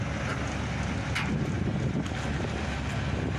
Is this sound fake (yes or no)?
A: no